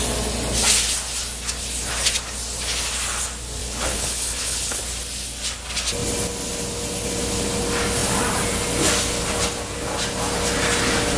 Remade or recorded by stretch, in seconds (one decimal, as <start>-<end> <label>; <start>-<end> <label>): 0.0-3.6 recorded; 3.6-4.8 remade; 4.8-11.2 recorded